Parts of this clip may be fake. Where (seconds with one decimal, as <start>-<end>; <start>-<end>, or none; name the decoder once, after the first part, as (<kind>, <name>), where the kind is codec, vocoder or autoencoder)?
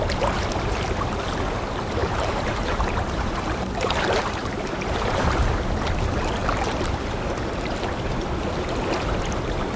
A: 2.0-5.7 (vocoder, BigVGAN v2)